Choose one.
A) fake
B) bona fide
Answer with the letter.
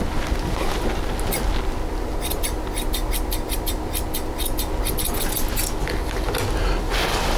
B